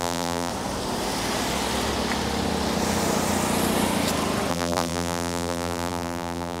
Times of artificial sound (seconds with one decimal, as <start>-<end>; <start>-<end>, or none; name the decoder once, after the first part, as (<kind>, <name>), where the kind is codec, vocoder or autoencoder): 0.0-0.5 (vocoder, BigVGAN v2); 4.5-6.6